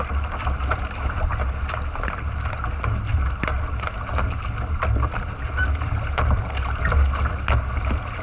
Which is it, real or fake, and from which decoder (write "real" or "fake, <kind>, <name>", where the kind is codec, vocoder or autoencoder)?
real